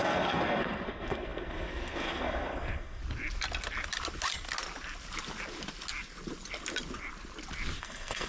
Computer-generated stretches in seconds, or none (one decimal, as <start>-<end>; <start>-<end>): 0.0-3.0; 7.8-8.3